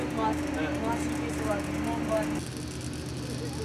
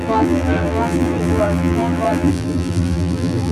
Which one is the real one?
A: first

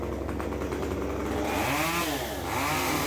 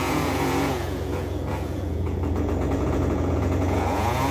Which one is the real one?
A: first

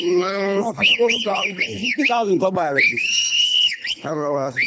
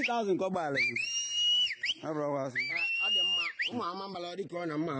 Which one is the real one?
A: second